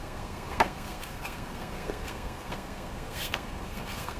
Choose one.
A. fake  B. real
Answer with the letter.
A